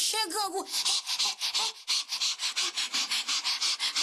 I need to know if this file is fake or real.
real